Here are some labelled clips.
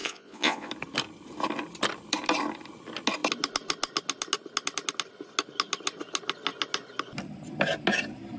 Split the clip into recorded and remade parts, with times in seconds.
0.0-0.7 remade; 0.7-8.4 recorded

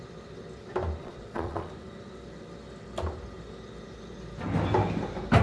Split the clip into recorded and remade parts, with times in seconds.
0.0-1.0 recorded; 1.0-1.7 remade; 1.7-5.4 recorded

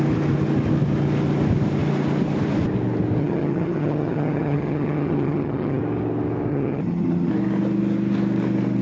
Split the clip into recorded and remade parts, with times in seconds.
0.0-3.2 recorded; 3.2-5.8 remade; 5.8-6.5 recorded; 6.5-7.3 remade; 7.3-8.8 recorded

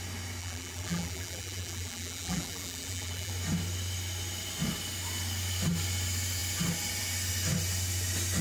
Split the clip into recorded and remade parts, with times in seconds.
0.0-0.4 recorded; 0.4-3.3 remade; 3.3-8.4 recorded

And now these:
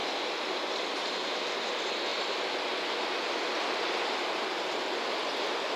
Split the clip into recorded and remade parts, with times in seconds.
0.0-5.8 recorded

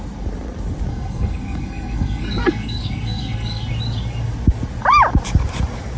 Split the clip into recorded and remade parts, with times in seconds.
0.0-0.9 recorded; 0.9-3.7 remade; 3.7-6.0 recorded